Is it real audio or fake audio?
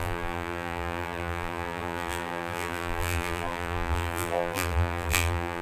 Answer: fake